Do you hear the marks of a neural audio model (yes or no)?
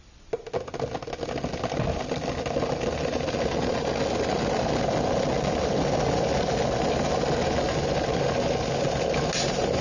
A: no